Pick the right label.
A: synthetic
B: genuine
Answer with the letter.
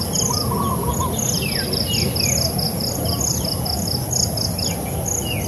B